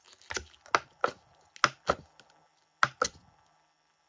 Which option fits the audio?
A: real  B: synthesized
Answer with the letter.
A